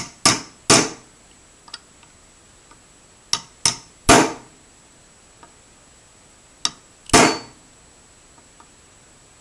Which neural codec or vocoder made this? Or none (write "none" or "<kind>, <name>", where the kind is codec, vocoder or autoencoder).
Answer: none